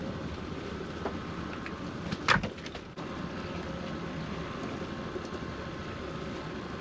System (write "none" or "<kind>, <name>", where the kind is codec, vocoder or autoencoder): none